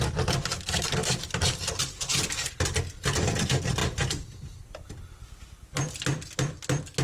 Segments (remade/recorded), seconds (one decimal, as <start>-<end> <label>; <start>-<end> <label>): 0.0-1.0 recorded; 1.0-2.5 remade; 2.5-7.0 recorded